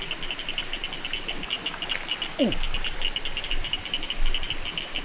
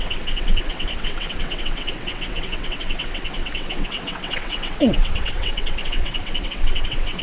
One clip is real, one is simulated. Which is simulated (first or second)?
second